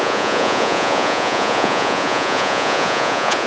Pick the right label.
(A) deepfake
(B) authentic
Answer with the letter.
A